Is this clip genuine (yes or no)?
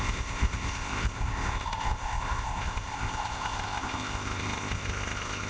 no